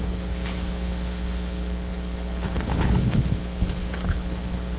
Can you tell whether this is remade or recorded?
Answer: remade